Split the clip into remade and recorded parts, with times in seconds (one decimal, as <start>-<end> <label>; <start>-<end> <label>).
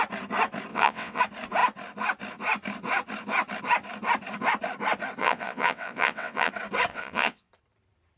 0.0-0.7 recorded; 0.7-1.2 remade; 1.2-5.2 recorded; 5.2-6.5 remade; 6.5-6.9 recorded; 6.9-7.5 remade; 7.5-8.2 recorded